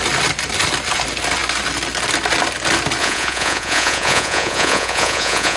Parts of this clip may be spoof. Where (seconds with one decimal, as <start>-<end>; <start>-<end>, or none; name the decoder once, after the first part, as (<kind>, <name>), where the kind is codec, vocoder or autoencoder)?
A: 3.0-5.6 (vocoder, Vocos)